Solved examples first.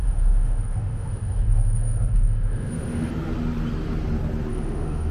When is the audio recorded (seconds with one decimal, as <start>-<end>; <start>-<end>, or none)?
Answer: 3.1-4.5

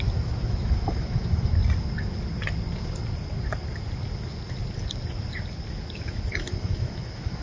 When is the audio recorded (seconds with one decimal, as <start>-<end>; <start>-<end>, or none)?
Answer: 1.6-6.0

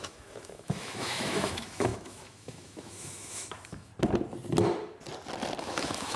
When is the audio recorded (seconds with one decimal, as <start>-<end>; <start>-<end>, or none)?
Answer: 3.9-5.6